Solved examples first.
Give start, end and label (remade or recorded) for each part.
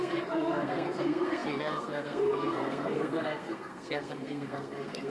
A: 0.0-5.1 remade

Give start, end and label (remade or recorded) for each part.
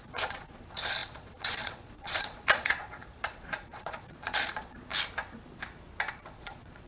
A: 0.0-4.9 remade; 4.9-6.1 recorded; 6.1-6.9 remade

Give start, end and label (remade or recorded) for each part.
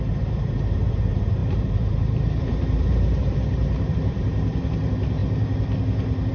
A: 0.0-5.2 remade; 5.2-6.3 recorded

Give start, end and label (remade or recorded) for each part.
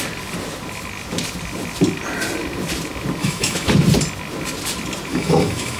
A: 0.0-3.2 recorded; 3.2-3.7 remade; 3.7-5.1 recorded; 5.1-5.8 remade